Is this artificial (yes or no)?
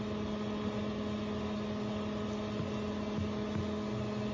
no